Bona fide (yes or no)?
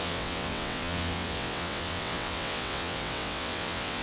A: no